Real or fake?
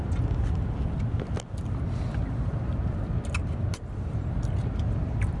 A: real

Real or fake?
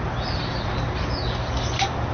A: real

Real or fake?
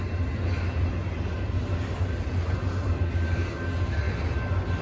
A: real